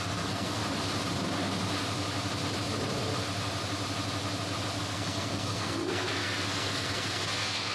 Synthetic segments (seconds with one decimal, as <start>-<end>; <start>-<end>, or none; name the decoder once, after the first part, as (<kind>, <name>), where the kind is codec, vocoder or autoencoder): 0.0-0.6 (codec, SNAC); 4.8-7.7